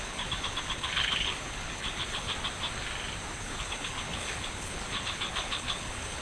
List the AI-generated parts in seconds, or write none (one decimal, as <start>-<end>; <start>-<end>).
0.0-2.3; 3.4-6.2

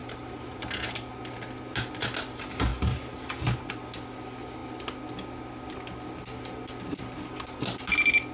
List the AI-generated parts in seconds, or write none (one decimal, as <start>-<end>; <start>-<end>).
0.0-0.6; 2.7-3.7

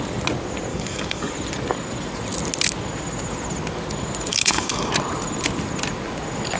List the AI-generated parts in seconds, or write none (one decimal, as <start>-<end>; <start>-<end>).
0.7-1.3; 4.3-4.9

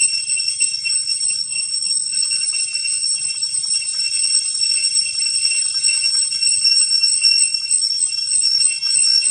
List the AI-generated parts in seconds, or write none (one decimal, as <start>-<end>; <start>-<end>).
1.4-2.3

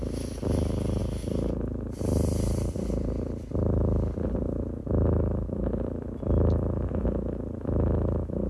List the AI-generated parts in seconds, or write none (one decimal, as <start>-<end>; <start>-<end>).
none

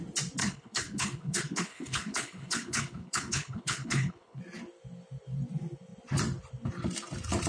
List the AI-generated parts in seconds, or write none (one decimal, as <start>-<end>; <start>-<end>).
0.4-4.4

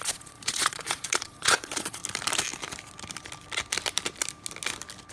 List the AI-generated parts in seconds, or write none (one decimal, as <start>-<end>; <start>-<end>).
0.0-2.0